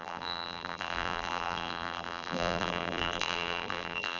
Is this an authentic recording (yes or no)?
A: no